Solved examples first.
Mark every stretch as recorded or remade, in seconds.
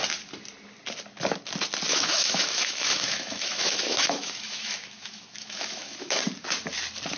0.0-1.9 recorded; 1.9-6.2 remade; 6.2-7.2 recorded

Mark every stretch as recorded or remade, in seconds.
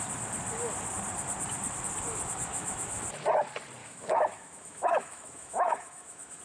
0.0-2.5 recorded; 2.5-3.0 remade; 3.0-3.8 recorded; 3.8-6.4 remade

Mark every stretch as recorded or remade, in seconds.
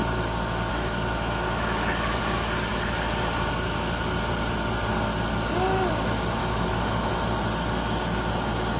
0.0-0.7 recorded; 0.7-2.2 remade; 2.2-6.4 recorded; 6.4-7.1 remade; 7.1-8.8 recorded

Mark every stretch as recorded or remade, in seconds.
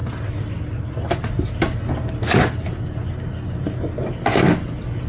0.0-5.1 recorded